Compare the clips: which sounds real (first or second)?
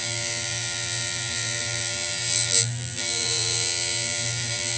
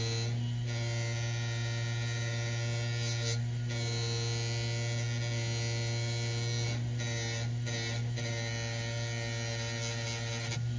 second